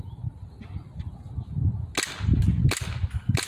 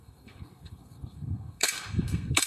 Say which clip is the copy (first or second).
second